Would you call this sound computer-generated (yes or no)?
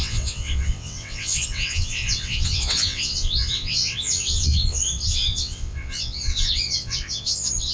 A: yes